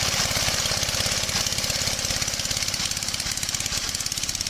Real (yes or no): yes